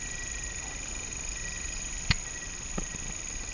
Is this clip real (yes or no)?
yes